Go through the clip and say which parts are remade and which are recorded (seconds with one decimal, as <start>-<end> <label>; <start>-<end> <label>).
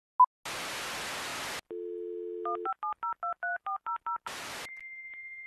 0.0-3.5 recorded; 3.5-4.5 remade; 4.5-5.5 recorded